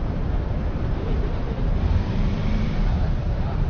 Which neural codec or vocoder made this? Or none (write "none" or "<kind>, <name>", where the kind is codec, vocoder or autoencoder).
vocoder, BigVGAN v2